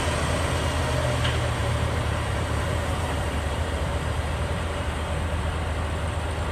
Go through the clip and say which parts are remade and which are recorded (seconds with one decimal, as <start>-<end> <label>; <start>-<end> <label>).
0.0-1.6 recorded; 1.6-5.5 remade; 5.5-6.5 recorded